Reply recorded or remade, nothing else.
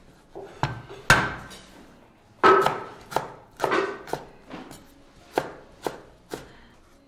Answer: recorded